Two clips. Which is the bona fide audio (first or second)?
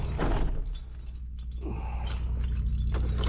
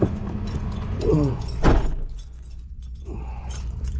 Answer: first